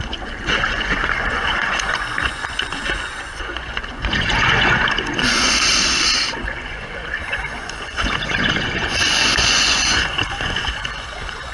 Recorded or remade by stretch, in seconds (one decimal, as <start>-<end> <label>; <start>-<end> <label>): 0.0-5.7 remade; 5.7-6.3 recorded; 6.3-11.5 remade